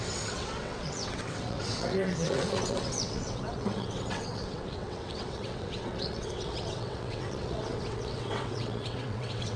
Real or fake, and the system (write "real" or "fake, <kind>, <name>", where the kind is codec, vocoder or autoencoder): fake, vocoder, WaveNeXt